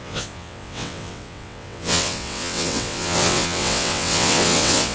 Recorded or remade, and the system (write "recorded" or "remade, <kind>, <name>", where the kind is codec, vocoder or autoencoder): remade, vocoder, WaveNeXt